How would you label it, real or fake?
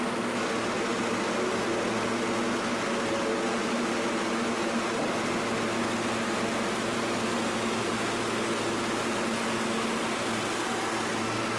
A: real